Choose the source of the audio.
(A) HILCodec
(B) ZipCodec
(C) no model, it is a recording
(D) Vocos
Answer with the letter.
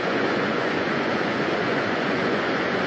D